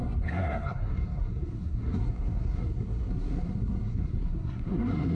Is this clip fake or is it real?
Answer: fake